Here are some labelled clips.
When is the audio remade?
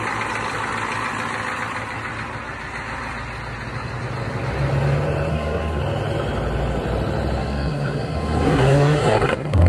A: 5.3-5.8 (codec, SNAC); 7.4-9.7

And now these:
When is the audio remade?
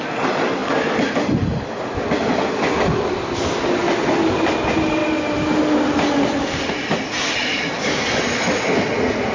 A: none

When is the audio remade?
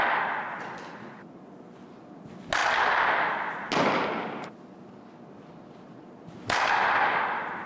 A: none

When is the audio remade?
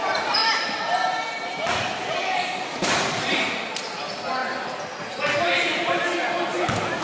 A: none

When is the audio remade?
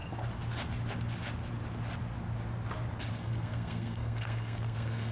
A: 3.1-5.1 (codec, SNAC)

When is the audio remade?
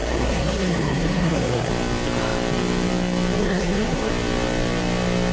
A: 0.0-1.7 (codec, SNAC); 3.4-4.1